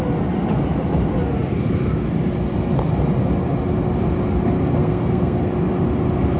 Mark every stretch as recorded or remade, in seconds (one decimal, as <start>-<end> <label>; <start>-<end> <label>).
0.0-4.8 recorded; 4.8-5.5 remade; 5.5-6.4 recorded